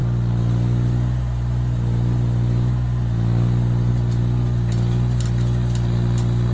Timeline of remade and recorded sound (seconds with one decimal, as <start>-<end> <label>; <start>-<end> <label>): 0.0-6.5 recorded